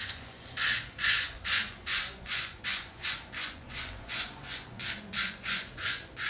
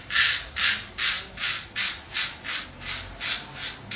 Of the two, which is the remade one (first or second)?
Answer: first